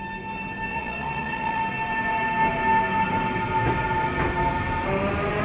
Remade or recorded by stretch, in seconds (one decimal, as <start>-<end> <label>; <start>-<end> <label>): 0.0-0.7 recorded; 0.7-1.6 remade; 1.6-5.4 recorded